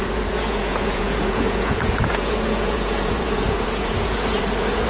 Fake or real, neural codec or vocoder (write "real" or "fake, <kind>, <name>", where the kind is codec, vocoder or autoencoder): fake, vocoder, Vocos